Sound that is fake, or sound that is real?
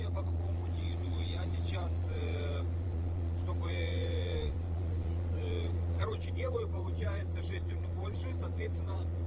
fake